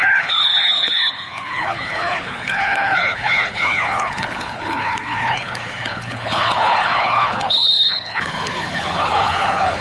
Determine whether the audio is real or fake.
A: fake